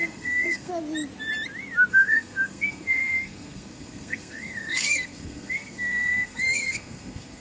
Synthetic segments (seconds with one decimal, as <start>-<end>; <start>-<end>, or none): 0.0-0.7; 1.9-7.4